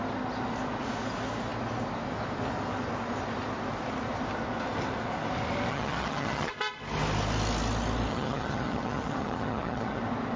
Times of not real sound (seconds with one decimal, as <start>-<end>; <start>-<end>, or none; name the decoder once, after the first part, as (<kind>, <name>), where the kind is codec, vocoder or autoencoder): 5.7-6.5 (vocoder, HiFi-GAN); 8.1-10.0